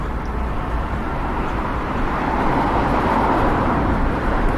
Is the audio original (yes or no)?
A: no